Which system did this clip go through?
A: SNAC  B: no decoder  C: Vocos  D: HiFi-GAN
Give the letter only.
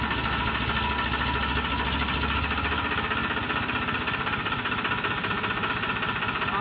B